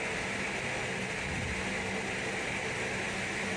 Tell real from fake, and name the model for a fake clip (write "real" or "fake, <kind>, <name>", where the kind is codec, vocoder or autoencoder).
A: real